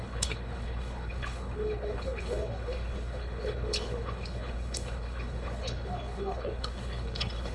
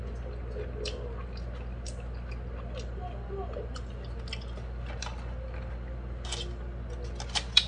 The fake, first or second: first